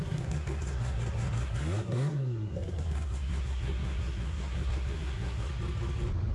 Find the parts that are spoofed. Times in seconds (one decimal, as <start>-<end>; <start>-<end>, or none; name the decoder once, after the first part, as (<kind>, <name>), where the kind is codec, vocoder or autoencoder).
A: 0.0-5.5 (codec, SNAC)